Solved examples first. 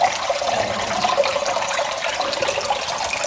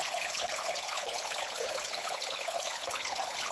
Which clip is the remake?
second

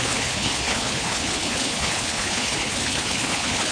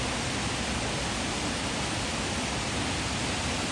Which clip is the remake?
first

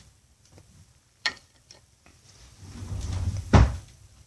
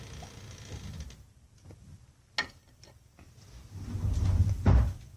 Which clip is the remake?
first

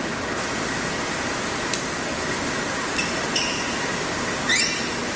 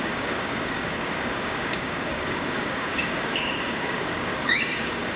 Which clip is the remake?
second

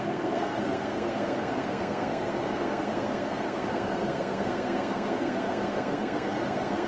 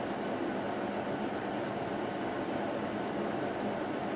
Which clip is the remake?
first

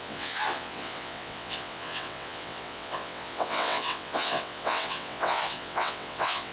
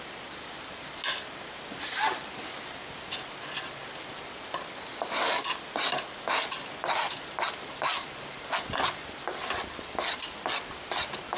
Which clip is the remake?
first